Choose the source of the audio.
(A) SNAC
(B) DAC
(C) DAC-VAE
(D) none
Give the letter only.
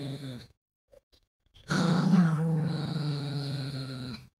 C